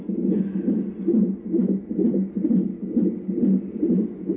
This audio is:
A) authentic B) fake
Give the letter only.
A